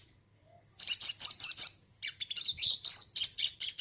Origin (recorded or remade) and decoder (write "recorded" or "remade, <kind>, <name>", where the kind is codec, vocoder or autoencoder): remade, vocoder, BigVGAN v2